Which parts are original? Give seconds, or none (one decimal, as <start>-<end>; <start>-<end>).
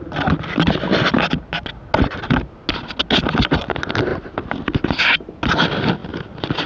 0.0-6.7